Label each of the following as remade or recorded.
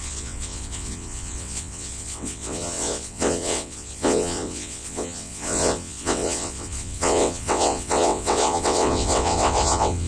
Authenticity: remade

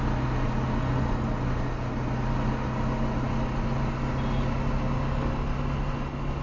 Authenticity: recorded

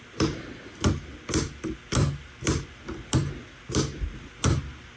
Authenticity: recorded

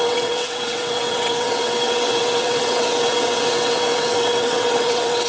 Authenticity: remade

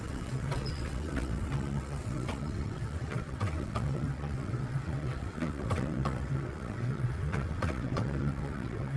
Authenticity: remade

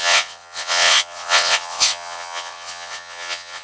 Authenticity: remade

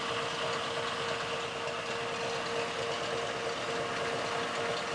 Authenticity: recorded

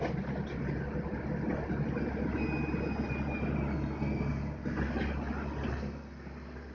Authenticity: recorded